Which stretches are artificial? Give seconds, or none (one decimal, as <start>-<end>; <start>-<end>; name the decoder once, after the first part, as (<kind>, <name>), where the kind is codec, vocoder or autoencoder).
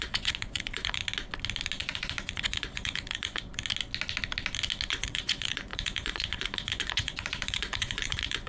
0.0-1.0 (vocoder, Vocos); 1.8-3.5; 4.9-8.5